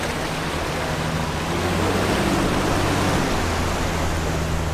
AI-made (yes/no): no